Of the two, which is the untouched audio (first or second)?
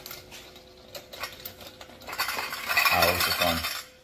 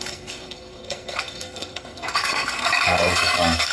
first